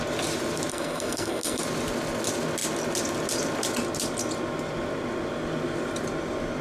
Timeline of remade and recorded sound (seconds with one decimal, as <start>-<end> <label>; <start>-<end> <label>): 0.0-0.7 recorded; 0.7-1.6 remade; 1.6-6.6 recorded